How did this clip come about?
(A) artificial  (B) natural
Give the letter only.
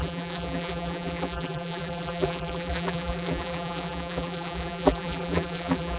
A